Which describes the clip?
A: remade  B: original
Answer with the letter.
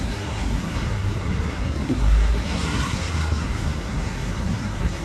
A